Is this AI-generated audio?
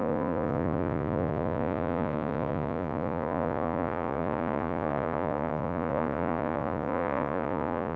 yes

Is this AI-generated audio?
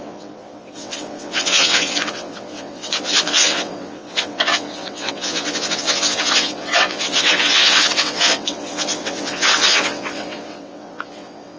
yes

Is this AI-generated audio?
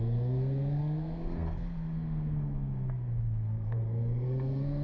yes